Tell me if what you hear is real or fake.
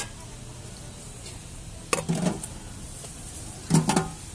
real